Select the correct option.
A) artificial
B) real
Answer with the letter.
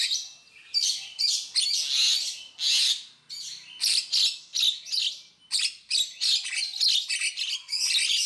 B